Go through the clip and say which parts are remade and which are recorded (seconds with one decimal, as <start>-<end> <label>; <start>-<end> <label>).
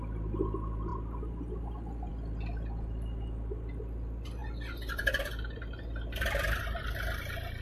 0.0-7.6 recorded